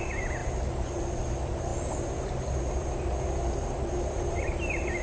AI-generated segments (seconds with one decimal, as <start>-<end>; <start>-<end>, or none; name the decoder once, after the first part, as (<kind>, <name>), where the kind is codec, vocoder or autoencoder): none